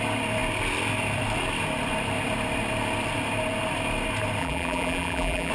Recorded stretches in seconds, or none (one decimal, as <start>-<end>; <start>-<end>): 0.0-4.4